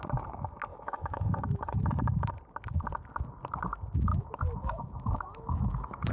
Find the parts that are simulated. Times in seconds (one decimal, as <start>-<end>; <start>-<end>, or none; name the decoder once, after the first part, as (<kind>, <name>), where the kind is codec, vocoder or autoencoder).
0.7-2.3 (autoencoder, DAC-VAE); 4.1-6.1